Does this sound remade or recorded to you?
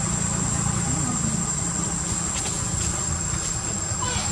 recorded